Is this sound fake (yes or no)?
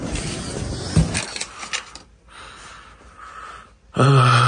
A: no